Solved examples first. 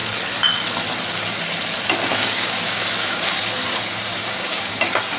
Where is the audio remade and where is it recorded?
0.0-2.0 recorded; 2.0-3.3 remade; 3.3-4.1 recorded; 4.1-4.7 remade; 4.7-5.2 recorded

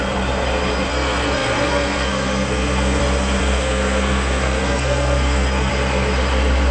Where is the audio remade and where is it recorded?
0.0-0.9 recorded; 0.9-3.0 remade; 3.0-3.4 recorded; 3.4-5.7 remade; 5.7-6.7 recorded

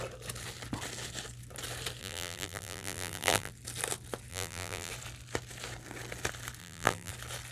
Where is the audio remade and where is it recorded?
0.0-2.0 recorded; 2.0-3.5 remade; 3.5-4.3 recorded; 4.3-4.9 remade; 4.9-6.6 recorded; 6.6-7.1 remade; 7.1-7.5 recorded